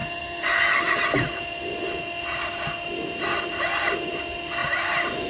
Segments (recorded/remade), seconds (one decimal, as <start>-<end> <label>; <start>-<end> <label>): 0.0-4.6 recorded; 4.6-5.3 remade